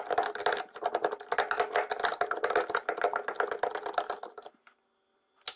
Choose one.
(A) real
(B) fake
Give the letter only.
A